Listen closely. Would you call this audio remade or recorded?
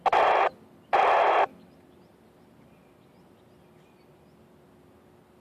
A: recorded